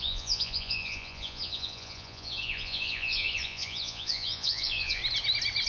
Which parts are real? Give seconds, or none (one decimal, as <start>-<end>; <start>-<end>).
5.0-5.7